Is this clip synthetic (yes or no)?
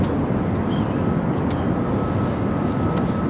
no